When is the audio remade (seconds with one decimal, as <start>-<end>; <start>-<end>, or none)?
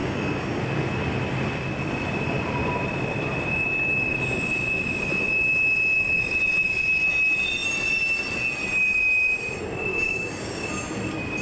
0.0-0.6; 9.9-10.7